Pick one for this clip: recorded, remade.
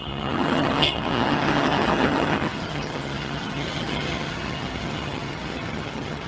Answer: remade